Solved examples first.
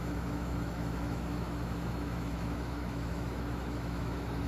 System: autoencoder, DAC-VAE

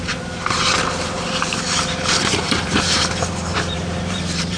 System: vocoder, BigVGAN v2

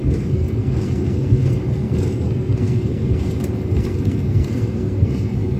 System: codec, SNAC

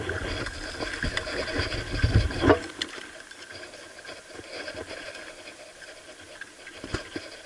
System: none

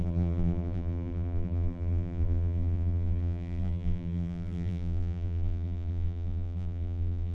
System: vocoder, BigVGAN v2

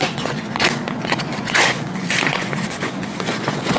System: vocoder, Vocos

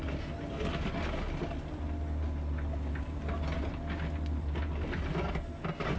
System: none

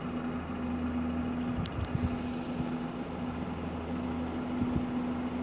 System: none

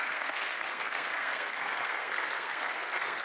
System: codec, SNAC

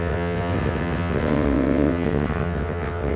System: vocoder, WaveNeXt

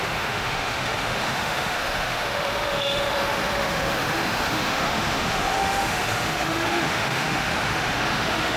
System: autoencoder, DAC-VAE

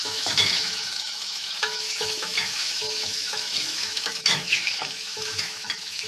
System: autoencoder, DAC-VAE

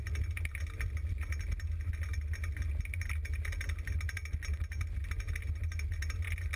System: none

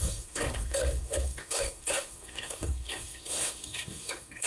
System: codec, SNAC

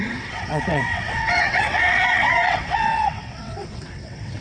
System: vocoder, WaveNeXt